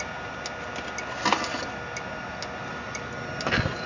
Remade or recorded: recorded